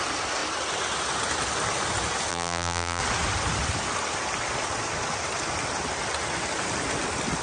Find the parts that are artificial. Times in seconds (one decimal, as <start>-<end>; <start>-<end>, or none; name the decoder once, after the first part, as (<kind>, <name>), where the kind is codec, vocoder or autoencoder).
2.3-3.0 (vocoder, BigVGAN v2)